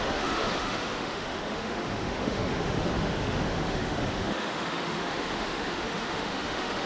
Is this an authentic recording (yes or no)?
no